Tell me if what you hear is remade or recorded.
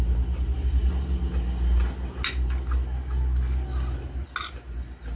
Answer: recorded